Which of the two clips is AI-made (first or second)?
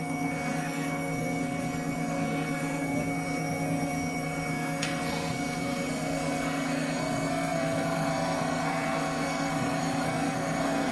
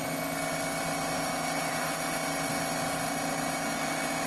first